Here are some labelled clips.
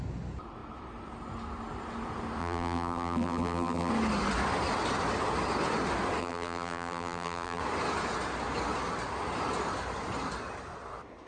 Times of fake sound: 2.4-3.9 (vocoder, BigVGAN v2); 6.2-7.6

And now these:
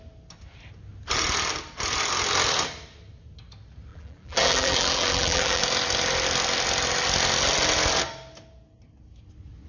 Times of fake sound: 3.9-5.6 (vocoder, BigVGAN v2)